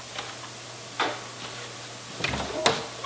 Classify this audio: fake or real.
real